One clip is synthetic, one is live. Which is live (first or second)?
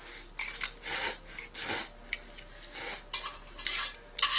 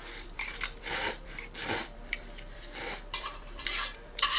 first